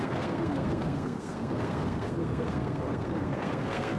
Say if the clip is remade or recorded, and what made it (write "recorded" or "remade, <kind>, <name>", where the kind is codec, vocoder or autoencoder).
remade, codec, SNAC